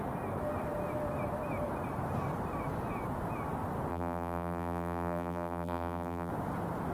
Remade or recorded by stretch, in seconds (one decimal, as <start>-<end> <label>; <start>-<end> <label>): 0.0-3.9 recorded; 3.9-6.3 remade; 6.3-6.9 recorded